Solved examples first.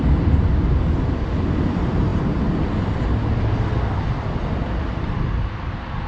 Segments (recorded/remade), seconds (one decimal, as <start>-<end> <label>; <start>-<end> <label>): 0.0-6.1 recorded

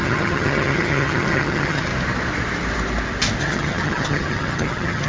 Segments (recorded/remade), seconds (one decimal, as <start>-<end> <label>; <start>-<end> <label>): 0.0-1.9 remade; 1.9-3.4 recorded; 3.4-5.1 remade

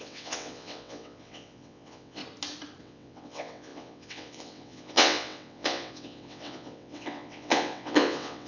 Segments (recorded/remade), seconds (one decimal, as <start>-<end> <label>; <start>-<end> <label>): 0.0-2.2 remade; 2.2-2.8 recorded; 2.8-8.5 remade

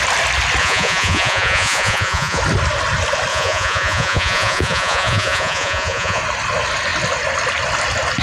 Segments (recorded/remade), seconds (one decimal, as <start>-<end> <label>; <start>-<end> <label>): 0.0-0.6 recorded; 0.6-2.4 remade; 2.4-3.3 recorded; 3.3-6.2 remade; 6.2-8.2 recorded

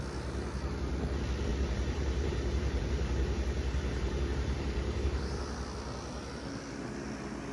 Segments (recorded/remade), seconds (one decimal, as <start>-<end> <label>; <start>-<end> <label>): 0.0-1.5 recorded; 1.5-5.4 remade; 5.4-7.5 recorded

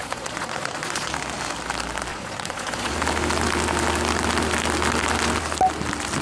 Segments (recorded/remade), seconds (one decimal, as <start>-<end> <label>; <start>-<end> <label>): 0.0-1.1 remade; 1.1-2.1 recorded; 2.1-2.9 remade; 2.9-6.2 recorded

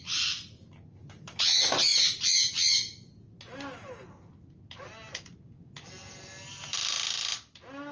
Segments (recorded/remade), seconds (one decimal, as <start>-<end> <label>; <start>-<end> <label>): 0.0-7.9 recorded

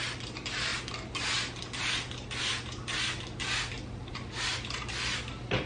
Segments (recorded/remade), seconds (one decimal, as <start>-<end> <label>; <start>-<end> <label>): 0.0-0.7 remade; 0.7-4.1 recorded; 4.1-5.7 remade